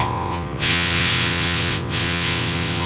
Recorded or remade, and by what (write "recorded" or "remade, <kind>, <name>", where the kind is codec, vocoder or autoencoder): remade, vocoder, WaveNeXt